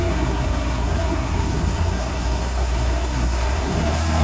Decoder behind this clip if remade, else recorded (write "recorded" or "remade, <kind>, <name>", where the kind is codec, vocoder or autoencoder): remade, codec, SNAC